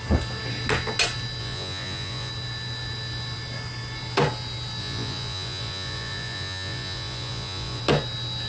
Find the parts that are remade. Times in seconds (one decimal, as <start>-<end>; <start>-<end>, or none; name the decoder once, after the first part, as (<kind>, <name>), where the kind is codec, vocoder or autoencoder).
1.4-2.3 (vocoder, Vocos); 4.8-7.8